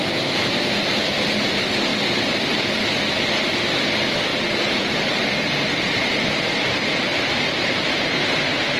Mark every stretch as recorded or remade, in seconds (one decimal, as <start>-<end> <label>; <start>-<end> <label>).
0.0-1.9 recorded; 1.9-2.6 remade; 2.6-4.3 recorded; 4.3-8.8 remade